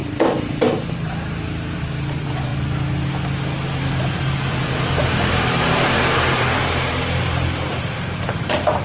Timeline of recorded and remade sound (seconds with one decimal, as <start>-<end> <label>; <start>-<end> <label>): 0.0-2.5 remade; 2.5-4.0 recorded; 4.0-6.6 remade; 6.6-7.2 recorded; 7.2-8.8 remade

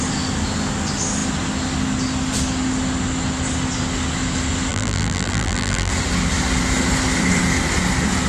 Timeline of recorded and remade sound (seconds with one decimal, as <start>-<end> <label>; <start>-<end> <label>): 0.0-4.7 recorded; 4.7-5.9 remade; 5.9-8.3 recorded

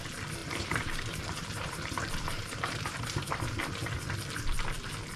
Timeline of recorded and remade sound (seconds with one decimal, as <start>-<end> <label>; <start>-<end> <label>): 0.0-0.4 recorded; 0.4-3.3 remade; 3.3-5.2 recorded

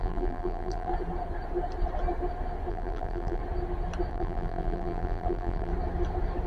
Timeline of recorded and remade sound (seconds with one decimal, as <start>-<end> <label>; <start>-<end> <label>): 0.0-0.9 remade; 0.9-2.7 recorded; 2.7-3.4 remade; 3.4-4.1 recorded; 4.1-5.7 remade; 5.7-6.5 recorded

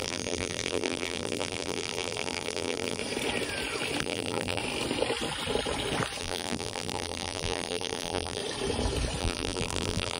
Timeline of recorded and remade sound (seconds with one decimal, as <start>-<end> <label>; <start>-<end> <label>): 0.0-3.0 remade; 3.0-4.0 recorded; 4.0-4.6 remade; 4.6-6.2 recorded; 6.2-8.4 remade; 8.4-9.2 recorded; 9.2-10.2 remade

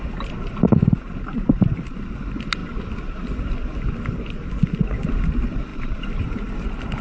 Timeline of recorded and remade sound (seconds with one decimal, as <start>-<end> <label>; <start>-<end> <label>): 0.0-5.7 recorded; 5.7-6.5 remade; 6.5-7.0 recorded

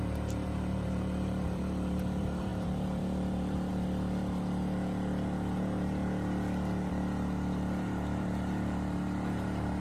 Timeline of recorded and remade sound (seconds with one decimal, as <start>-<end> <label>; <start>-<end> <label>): 0.0-6.0 remade; 6.0-6.9 recorded; 6.9-9.8 remade